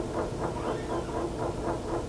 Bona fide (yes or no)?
yes